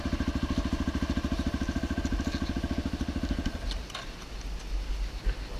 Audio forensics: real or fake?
real